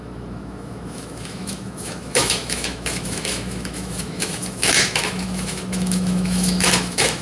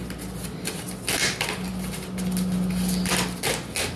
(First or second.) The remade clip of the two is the first